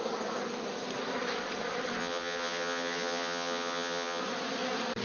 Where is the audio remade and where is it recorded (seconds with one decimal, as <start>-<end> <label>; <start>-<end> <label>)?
0.0-2.0 recorded; 2.0-4.2 remade; 4.2-5.0 recorded